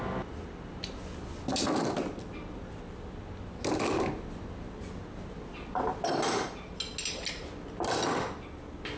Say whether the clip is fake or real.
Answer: real